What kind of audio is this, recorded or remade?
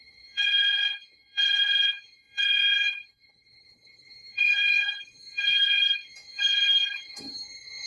remade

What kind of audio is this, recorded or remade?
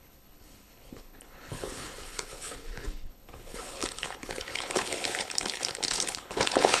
remade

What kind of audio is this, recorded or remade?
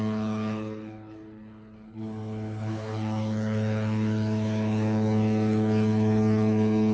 remade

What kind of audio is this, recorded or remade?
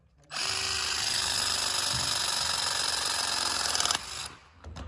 recorded